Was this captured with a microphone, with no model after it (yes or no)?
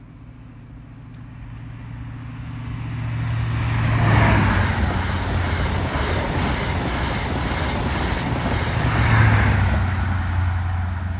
yes